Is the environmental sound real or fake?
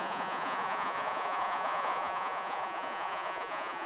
fake